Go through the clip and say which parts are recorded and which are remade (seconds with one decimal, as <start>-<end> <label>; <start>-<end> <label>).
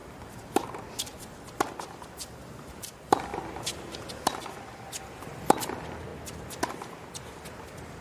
0.0-3.3 remade; 3.3-4.1 recorded; 4.1-8.0 remade